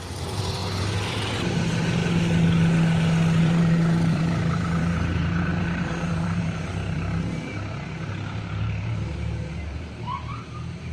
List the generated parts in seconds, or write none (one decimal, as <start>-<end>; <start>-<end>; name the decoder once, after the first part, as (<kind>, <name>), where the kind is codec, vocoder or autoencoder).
0.0-2.0 (vocoder, BigVGAN v2); 3.4-10.9